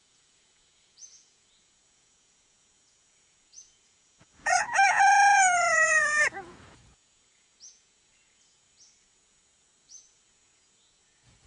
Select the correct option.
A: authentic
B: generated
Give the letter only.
B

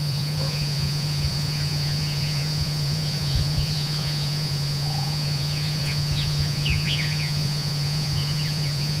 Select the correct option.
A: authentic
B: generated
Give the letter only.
B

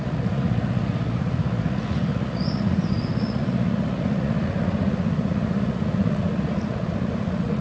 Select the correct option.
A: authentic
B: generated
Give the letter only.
B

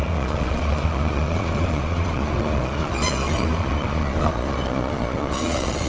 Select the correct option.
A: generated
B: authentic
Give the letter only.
A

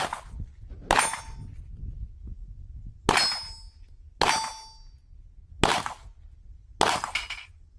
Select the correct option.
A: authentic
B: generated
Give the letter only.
A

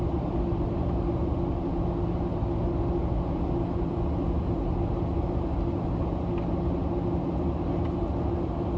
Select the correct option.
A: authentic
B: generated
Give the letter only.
A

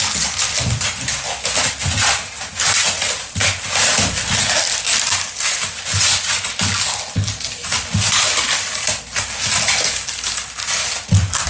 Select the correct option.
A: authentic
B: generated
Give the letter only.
A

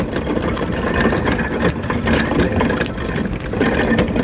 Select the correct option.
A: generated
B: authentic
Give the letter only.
B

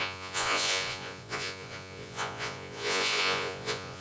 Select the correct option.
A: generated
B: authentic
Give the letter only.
A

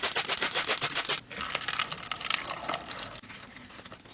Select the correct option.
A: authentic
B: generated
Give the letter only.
A